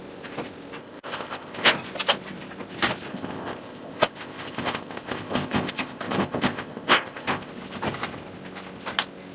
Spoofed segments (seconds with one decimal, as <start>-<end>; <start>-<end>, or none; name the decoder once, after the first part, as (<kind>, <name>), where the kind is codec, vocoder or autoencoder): 0.8-1.7 (codec, ZipCodec); 3.1-7.5